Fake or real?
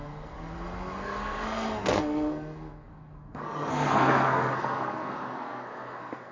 fake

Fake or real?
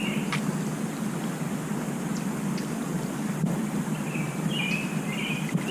real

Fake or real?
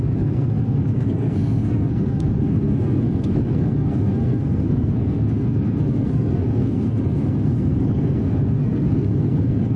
fake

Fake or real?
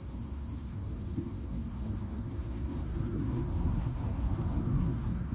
fake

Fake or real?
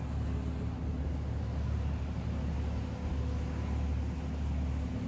real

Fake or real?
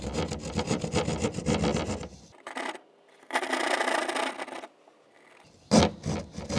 real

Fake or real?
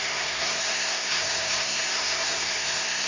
fake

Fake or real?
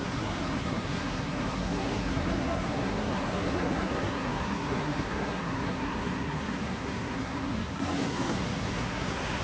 fake